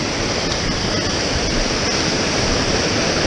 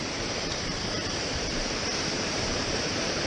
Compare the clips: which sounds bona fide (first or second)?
first